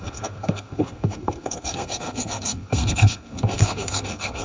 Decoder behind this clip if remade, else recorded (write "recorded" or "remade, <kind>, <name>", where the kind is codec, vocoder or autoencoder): remade, codec, SNAC